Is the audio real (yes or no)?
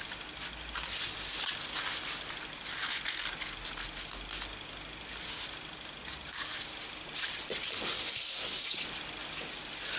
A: yes